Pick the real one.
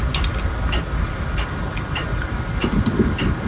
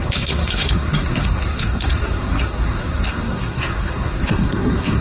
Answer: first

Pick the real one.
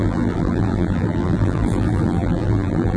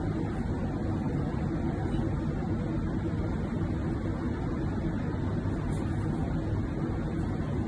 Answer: second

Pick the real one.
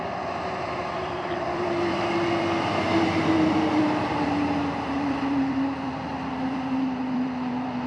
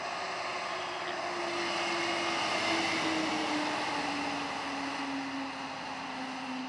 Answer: second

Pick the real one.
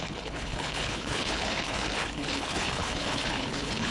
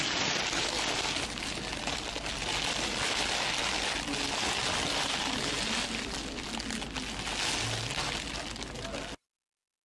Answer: second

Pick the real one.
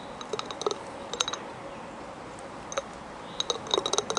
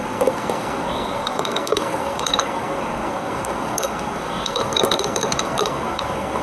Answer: first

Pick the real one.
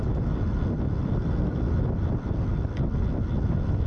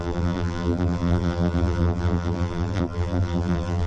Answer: first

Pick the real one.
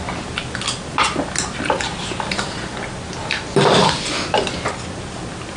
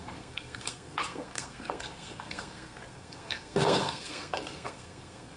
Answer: first